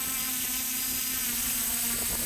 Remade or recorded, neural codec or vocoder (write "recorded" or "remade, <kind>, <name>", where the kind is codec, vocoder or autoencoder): recorded